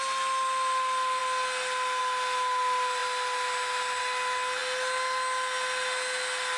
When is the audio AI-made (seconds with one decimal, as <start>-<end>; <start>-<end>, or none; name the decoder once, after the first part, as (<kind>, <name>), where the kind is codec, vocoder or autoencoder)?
none